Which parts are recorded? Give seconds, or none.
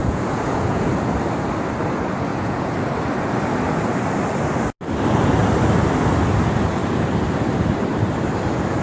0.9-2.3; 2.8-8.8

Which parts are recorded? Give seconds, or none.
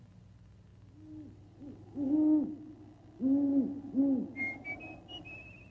0.0-5.7